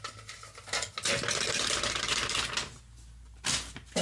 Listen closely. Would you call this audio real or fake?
real